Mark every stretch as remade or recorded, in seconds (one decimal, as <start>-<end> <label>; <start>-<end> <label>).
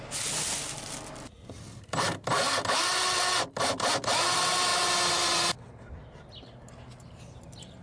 0.0-7.8 recorded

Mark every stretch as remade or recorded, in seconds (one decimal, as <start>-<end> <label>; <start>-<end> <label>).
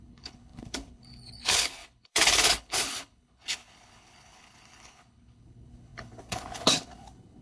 0.0-7.4 remade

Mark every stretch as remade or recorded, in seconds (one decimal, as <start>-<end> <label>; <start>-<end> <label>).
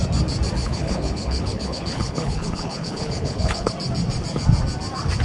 0.0-0.6 recorded; 0.6-3.7 remade; 3.7-5.2 recorded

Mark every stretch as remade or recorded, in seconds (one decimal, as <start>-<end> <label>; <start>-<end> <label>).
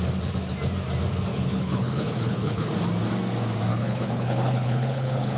0.0-1.3 recorded; 1.3-2.7 remade; 2.7-3.7 recorded; 3.7-5.4 remade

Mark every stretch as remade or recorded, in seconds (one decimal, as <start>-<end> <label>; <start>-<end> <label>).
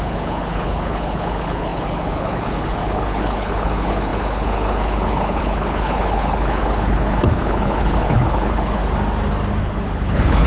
0.0-8.8 remade; 8.8-9.6 recorded; 9.6-10.5 remade